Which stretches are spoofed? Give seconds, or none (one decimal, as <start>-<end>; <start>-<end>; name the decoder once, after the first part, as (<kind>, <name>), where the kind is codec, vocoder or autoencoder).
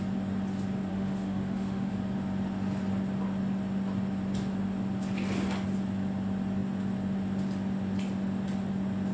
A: 0.9-1.9 (autoencoder, DAC-VAE)